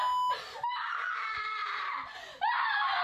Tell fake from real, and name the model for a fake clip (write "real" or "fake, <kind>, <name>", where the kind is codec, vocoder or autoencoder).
real